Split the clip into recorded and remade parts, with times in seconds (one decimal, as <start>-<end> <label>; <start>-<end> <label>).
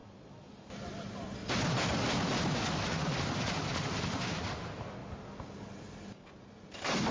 0.0-7.1 recorded